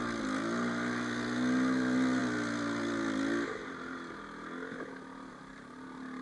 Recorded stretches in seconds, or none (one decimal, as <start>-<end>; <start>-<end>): 0.0-6.2